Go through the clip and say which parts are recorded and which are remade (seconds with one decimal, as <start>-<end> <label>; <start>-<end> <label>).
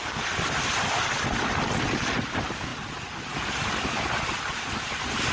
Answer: 0.0-5.3 recorded